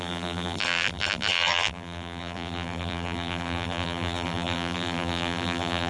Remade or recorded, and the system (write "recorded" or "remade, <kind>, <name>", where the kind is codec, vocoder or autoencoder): remade, vocoder, BigVGAN v2